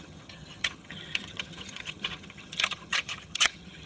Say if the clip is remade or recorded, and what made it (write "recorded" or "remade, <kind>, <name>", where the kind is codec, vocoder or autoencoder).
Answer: remade, vocoder, HiFi-GAN